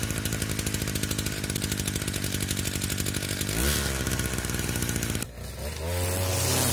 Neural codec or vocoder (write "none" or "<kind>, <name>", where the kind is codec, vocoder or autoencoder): none